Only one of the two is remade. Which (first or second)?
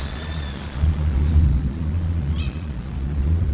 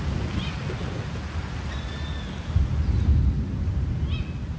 first